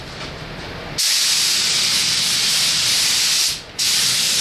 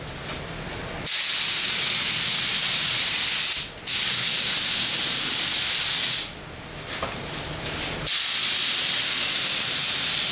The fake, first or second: second